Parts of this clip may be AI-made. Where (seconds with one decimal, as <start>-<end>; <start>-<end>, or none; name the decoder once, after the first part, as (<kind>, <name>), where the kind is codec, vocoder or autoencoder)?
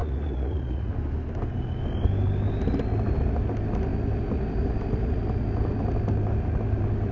0.0-0.9 (vocoder, Vocos)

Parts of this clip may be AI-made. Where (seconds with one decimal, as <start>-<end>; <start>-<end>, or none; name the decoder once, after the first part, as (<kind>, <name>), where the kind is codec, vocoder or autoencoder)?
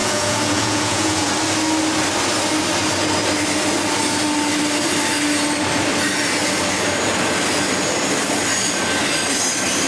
0.0-1.3 (vocoder, Vocos)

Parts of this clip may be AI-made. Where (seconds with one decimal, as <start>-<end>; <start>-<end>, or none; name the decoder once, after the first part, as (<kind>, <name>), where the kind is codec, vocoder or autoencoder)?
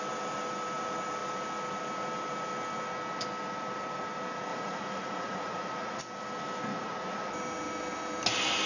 4.5-6.0 (vocoder, Vocos); 6.7-7.3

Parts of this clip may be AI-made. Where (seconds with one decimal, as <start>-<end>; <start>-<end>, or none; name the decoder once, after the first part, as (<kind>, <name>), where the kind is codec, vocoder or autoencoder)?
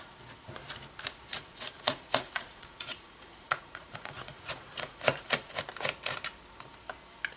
1.3-5.6 (vocoder, Vocos)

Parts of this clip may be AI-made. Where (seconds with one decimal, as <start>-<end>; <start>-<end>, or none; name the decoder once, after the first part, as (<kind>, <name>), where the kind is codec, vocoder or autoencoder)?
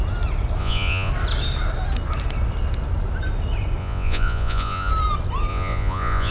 0.6-1.1 (vocoder, Vocos); 3.8-4.9; 5.5-6.3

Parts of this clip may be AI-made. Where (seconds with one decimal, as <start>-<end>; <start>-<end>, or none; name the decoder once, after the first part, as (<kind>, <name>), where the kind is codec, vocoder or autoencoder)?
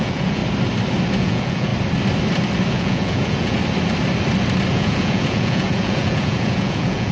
0.0-0.4 (vocoder, Vocos); 1.2-1.7; 2.7-3.6; 4.7-7.1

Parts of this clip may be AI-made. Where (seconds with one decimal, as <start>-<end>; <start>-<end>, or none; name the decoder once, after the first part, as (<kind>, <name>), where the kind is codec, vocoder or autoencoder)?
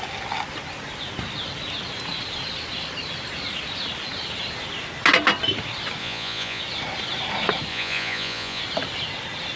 6.0-6.6 (vocoder, Vocos); 7.7-8.6